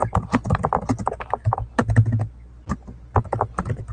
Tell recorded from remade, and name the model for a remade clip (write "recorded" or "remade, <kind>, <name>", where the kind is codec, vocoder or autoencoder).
recorded